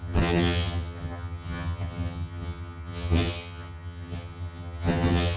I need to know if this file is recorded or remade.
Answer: remade